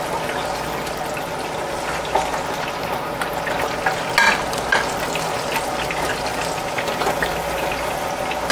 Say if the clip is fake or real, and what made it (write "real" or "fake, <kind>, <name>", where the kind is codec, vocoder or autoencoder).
real